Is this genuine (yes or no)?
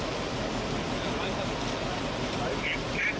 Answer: yes